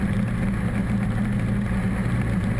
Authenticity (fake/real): fake